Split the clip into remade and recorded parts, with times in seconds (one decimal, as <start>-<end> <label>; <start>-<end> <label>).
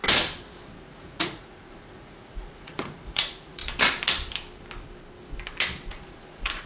0.0-0.8 recorded; 0.8-3.6 remade; 3.6-5.9 recorded; 5.9-6.7 remade